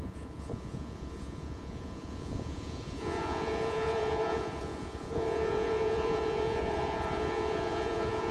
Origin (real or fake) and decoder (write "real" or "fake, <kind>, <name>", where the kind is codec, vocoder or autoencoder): fake, vocoder, Vocos